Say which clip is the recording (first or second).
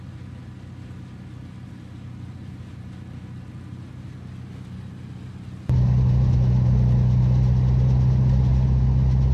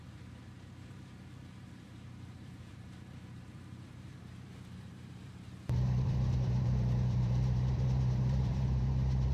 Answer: first